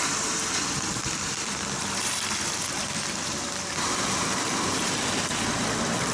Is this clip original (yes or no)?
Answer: yes